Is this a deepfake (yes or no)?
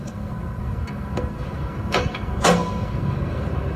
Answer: yes